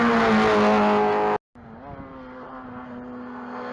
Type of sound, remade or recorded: recorded